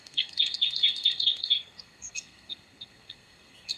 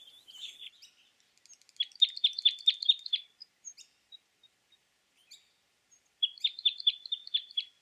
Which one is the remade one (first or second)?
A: first